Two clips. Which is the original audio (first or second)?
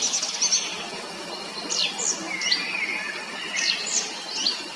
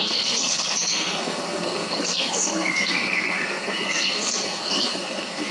first